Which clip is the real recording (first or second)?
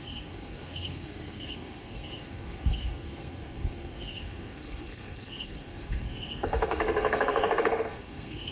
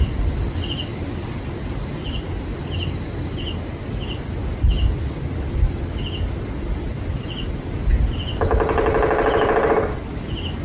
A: second